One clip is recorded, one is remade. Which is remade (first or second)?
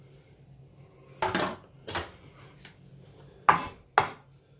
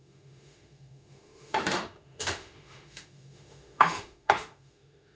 second